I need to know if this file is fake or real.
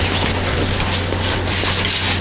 real